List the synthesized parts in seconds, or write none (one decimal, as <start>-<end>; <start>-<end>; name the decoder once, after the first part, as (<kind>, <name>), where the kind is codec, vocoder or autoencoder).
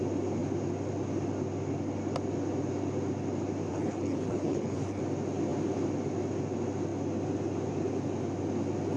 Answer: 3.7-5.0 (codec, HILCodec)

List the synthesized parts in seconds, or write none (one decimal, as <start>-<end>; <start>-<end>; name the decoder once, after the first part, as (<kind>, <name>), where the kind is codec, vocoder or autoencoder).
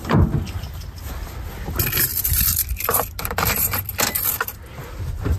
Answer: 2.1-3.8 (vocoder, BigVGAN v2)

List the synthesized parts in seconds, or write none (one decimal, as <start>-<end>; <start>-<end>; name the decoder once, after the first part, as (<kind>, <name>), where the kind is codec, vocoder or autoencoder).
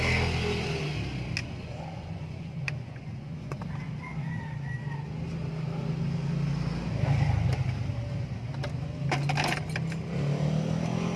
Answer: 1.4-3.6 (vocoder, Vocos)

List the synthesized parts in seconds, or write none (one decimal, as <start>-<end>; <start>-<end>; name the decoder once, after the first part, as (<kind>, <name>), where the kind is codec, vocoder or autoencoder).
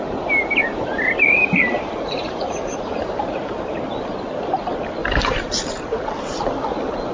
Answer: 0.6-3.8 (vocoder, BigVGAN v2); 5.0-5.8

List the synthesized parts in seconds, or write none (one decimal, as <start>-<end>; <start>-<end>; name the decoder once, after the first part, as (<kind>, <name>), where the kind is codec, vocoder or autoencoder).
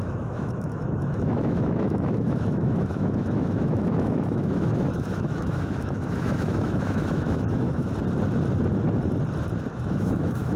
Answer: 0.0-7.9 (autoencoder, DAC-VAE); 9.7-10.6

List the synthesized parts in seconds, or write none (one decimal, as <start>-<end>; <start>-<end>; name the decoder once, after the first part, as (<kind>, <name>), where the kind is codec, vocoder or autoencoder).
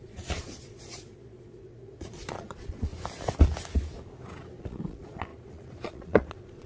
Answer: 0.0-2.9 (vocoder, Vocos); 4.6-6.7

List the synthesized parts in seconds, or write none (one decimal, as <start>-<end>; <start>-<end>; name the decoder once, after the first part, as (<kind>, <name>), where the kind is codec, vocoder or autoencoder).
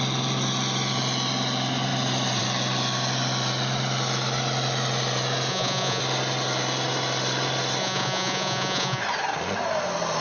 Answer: 5.5-6.0 (vocoder, Vocos); 7.8-9.0